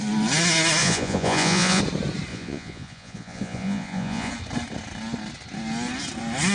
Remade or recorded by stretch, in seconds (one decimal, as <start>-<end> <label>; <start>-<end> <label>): 0.0-0.8 recorded; 0.8-1.8 remade; 1.8-2.3 recorded; 2.3-4.3 remade; 4.3-6.5 recorded

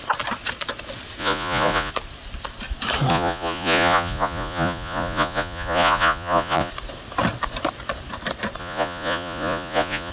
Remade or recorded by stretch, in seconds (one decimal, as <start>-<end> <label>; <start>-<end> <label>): 0.0-1.2 recorded; 1.2-1.9 remade; 1.9-3.1 recorded; 3.1-6.7 remade; 6.7-8.6 recorded; 8.6-10.1 remade

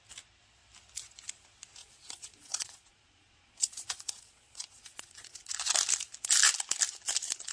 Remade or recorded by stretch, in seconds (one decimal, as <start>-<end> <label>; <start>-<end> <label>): 0.0-1.8 recorded; 1.8-5.5 remade; 5.5-7.5 recorded

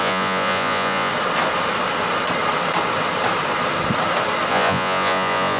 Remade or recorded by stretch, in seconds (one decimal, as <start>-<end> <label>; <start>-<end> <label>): 0.0-1.1 remade; 1.1-4.5 recorded; 4.5-5.6 remade

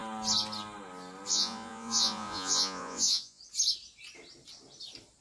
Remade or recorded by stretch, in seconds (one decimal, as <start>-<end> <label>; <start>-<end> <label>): 0.0-1.3 recorded; 1.3-3.4 remade; 3.4-5.2 recorded

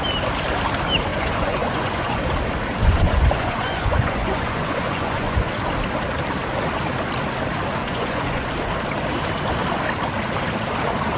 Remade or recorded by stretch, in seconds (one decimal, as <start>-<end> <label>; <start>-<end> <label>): 0.0-1.1 recorded; 1.1-2.2 remade; 2.2-2.8 recorded; 2.8-5.5 remade; 5.5-7.8 recorded; 7.8-8.5 remade; 8.5-11.2 recorded

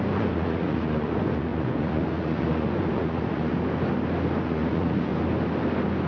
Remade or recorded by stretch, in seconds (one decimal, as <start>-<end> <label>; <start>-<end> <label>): 0.0-3.5 remade; 3.5-4.4 recorded; 4.4-5.1 remade; 5.1-6.1 recorded